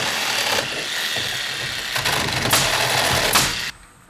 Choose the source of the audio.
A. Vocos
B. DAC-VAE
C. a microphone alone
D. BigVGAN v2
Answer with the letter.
C